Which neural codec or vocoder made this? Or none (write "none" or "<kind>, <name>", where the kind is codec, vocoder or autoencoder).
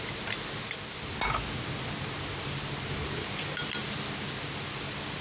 none